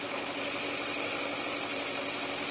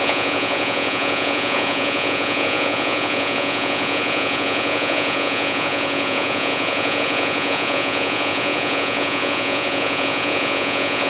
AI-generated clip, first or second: second